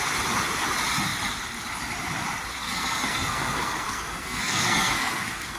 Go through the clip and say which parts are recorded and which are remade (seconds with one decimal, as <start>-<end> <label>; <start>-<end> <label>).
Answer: 0.0-2.6 recorded; 2.6-5.6 remade